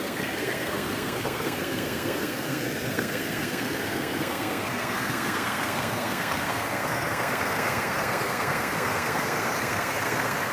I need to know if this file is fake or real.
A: fake